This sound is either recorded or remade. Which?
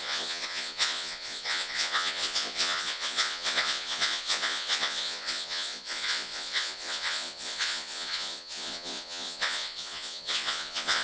remade